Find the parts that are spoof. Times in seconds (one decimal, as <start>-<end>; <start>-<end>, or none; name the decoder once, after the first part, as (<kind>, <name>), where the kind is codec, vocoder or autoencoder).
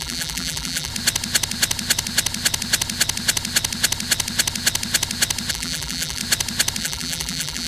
0.0-0.9 (vocoder, BigVGAN v2); 5.5-6.2; 6.8-7.7